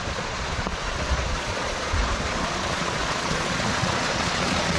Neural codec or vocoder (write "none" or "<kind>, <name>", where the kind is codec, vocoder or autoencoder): vocoder, Vocos